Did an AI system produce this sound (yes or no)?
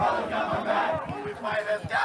no